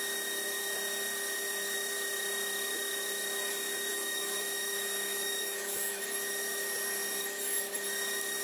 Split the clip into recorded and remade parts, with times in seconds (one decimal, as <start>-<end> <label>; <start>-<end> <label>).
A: 0.0-3.9 recorded; 3.9-6.0 remade; 6.0-8.4 recorded